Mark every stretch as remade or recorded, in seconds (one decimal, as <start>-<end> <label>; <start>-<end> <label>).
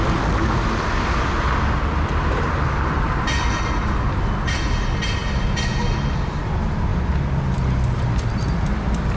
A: 0.0-9.2 recorded